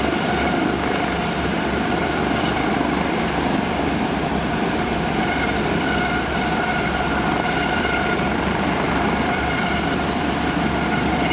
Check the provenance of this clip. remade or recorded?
remade